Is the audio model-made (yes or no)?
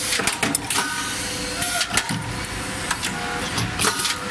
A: no